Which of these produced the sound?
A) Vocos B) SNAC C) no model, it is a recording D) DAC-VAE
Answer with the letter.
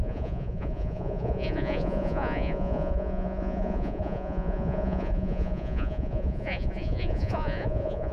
A